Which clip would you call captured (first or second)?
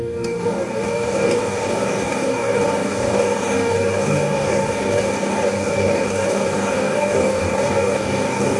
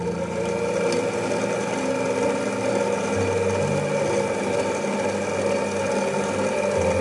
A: second